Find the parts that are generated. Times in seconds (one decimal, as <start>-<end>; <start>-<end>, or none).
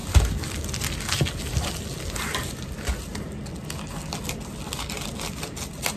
none